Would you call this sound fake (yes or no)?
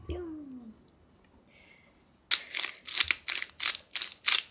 no